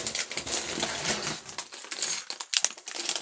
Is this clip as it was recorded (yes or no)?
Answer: yes